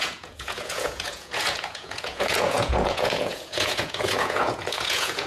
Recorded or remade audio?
remade